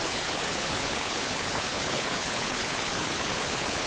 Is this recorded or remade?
remade